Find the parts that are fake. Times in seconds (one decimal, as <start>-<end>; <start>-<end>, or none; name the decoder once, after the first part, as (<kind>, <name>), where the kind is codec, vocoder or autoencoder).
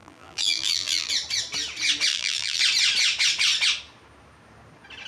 0.0-1.1 (vocoder, BigVGAN v2); 2.1-2.6